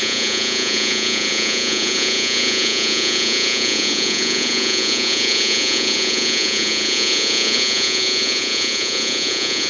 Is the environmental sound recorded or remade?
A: remade